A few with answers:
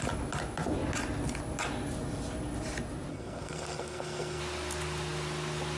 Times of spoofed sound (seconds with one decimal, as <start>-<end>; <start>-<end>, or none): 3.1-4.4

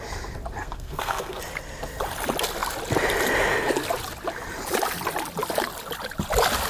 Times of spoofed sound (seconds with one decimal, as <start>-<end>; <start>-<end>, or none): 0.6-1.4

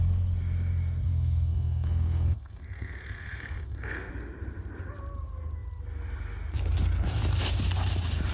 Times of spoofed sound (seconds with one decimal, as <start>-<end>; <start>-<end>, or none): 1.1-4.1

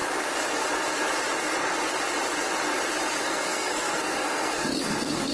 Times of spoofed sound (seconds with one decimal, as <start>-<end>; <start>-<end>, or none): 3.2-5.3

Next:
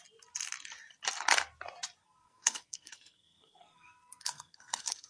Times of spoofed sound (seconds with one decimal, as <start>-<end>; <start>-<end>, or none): 2.0-5.1

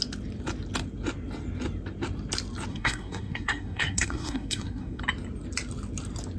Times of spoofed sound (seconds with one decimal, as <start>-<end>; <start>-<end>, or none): 2.7-5.0

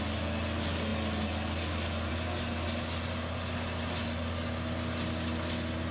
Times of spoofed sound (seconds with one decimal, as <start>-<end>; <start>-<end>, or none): none

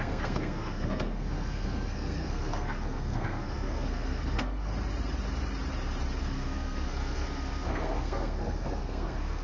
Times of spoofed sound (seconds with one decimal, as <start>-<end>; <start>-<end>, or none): 0.0-4.7; 6.2-9.4